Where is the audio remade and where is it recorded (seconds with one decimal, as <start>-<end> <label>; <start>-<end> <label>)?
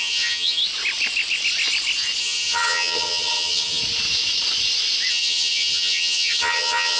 0.0-0.6 remade; 0.6-2.2 recorded; 2.2-3.8 remade; 3.8-5.1 recorded; 5.1-7.0 remade